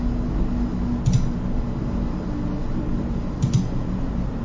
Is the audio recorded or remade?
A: recorded